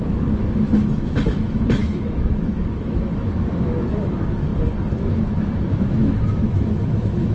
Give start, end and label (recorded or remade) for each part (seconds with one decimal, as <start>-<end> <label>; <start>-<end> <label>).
0.0-4.5 remade; 4.5-5.0 recorded; 5.0-7.3 remade